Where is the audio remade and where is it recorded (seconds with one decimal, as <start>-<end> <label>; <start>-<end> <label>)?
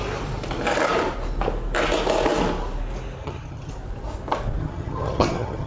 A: 0.0-3.2 recorded; 3.2-3.7 remade; 3.7-4.6 recorded; 4.6-5.7 remade